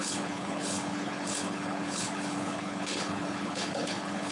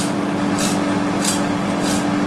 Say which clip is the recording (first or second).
second